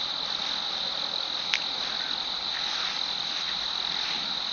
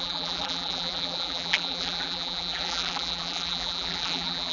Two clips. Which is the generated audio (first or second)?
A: second